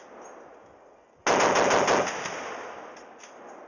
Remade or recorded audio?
recorded